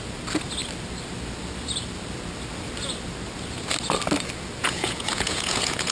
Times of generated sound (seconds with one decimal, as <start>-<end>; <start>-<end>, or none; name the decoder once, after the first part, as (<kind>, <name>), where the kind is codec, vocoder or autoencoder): 4.6-5.9 (vocoder, Vocos)